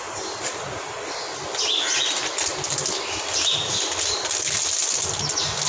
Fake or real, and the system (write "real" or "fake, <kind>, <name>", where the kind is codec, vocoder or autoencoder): real